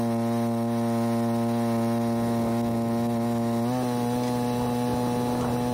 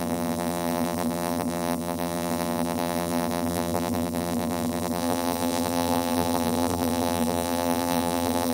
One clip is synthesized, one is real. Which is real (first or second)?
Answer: first